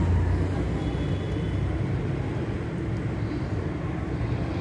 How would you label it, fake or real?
real